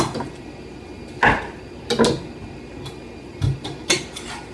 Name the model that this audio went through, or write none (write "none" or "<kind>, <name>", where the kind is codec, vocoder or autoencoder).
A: none